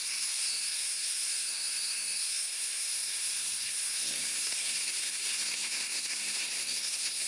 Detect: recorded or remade remade